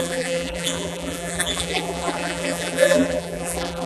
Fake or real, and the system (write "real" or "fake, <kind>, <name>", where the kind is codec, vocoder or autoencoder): fake, vocoder, BigVGAN v2